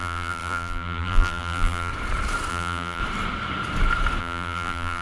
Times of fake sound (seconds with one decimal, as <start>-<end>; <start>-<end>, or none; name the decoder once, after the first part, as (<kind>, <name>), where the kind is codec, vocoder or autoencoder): 0.0-1.9 (vocoder, BigVGAN v2); 2.5-3.0; 4.2-5.0

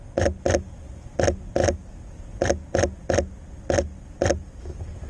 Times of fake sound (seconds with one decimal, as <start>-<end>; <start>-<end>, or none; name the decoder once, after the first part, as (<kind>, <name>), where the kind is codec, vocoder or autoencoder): none